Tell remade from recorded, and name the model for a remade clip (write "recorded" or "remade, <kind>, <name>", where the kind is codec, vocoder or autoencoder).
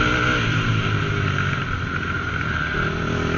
recorded